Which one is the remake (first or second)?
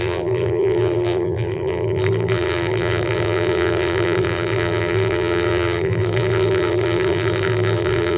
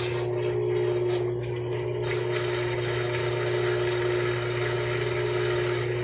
first